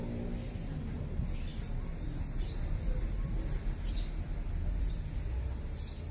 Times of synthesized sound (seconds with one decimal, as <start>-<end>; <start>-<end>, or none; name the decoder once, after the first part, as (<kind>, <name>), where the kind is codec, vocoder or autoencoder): none